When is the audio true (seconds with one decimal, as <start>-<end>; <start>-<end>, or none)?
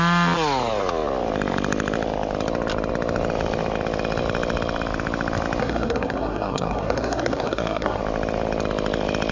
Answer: 0.0-5.6; 8.0-9.3